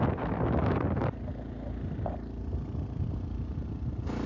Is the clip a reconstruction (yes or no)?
no